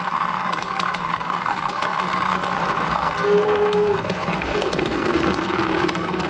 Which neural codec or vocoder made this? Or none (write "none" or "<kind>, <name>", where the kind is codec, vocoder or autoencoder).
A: codec, SNAC